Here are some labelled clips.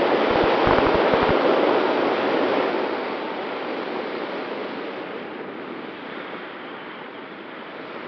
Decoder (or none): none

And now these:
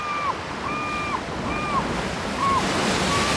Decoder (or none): none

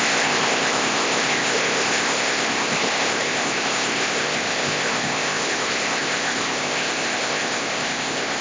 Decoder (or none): codec, ZipCodec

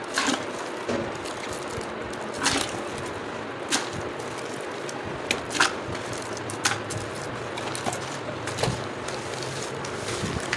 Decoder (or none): none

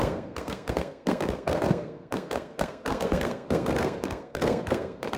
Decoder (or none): codec, SNAC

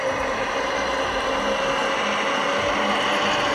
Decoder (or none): none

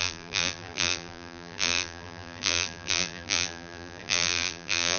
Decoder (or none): vocoder, BigVGAN v2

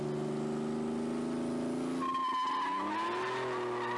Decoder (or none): none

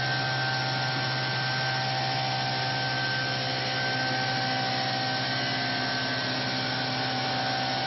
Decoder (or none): none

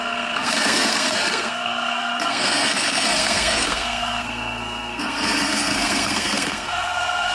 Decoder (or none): codec, SNAC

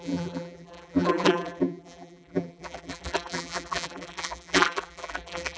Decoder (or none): vocoder, BigVGAN v2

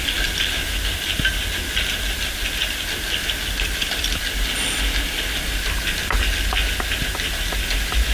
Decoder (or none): none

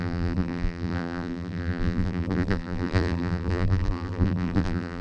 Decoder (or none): vocoder, BigVGAN v2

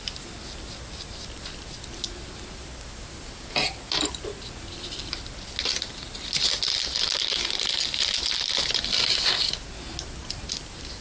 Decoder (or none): none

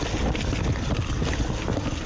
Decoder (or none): none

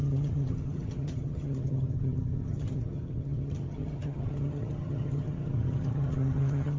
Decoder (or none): vocoder, HiFi-GAN